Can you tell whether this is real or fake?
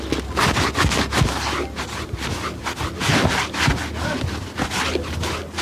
real